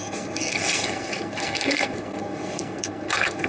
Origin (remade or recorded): remade